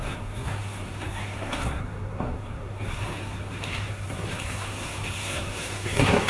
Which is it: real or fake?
fake